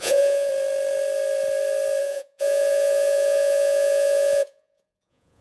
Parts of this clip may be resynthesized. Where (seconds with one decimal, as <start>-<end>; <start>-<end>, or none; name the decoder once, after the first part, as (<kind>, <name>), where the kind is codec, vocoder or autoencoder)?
0.0-0.5 (vocoder, Vocos); 2.0-5.4